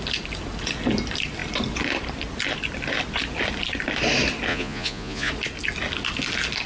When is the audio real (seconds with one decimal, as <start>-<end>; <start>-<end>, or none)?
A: 0.0-4.5; 5.3-6.7